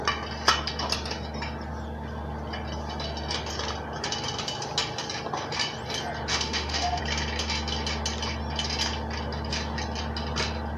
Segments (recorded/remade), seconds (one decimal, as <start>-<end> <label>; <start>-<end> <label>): 0.0-6.3 recorded; 6.3-7.0 remade; 7.0-10.8 recorded